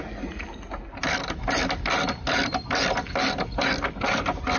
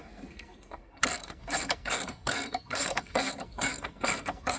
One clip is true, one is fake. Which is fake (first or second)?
second